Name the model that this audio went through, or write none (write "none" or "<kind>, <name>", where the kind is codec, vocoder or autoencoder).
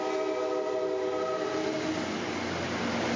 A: none